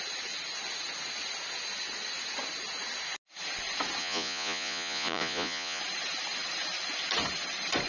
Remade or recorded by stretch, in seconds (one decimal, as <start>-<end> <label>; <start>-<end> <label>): 0.0-4.0 recorded; 4.0-5.8 remade; 5.8-7.9 recorded